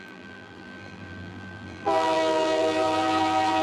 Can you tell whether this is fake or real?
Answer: fake